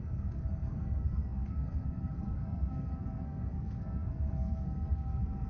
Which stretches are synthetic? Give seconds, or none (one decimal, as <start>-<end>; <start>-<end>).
0.0-5.5